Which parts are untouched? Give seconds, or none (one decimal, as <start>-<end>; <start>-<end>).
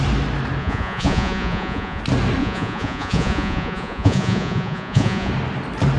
0.0-0.6; 2.0-2.4; 5.3-6.0